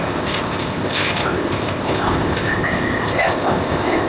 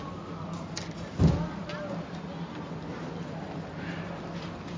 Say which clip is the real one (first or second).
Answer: second